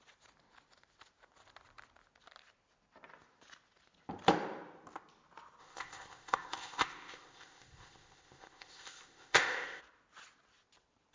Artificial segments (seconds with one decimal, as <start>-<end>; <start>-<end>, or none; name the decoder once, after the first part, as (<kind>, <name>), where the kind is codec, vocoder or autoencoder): 5.6-9.8 (codec, ZipCodec)